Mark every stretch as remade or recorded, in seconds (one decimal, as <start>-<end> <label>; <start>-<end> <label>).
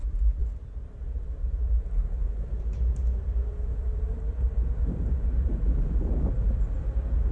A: 0.0-2.2 recorded; 2.2-5.6 remade; 5.6-7.3 recorded